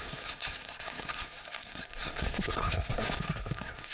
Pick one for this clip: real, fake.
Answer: fake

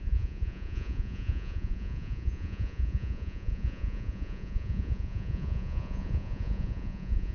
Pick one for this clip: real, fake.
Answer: fake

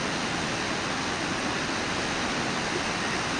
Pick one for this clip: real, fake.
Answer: real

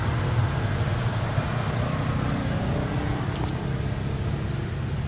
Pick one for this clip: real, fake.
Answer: real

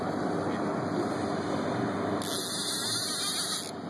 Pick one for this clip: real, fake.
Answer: real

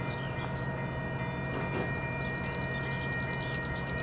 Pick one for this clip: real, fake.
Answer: real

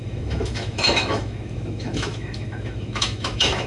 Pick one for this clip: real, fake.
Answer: fake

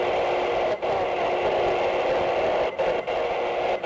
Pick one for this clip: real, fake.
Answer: real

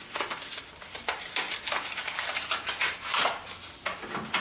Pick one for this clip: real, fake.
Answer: real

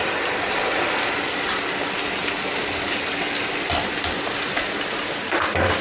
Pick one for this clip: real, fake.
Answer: real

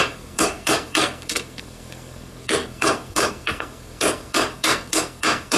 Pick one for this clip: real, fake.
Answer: fake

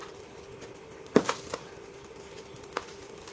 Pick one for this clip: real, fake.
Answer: fake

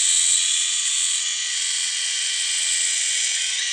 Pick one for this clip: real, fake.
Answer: fake